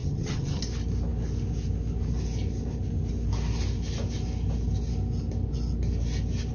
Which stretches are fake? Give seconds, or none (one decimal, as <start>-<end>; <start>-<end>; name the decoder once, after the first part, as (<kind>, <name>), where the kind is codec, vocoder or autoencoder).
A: 0.0-0.6 (vocoder, HiFi-GAN)